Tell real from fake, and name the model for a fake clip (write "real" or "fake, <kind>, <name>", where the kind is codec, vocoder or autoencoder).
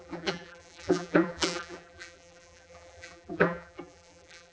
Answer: fake, vocoder, BigVGAN v2